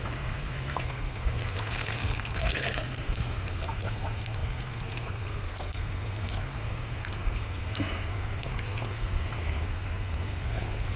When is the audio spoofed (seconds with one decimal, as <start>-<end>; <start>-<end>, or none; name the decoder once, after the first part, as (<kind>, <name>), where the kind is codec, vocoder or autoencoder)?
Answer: 0.0-11.0 (codec, SNAC)